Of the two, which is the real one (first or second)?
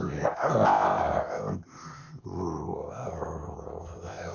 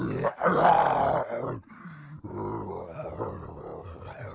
second